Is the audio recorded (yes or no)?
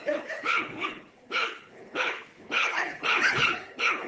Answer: no